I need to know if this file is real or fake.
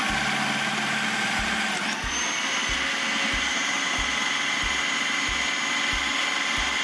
real